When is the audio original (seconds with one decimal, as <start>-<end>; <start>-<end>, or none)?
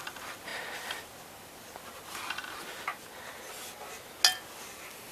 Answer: 0.0-5.1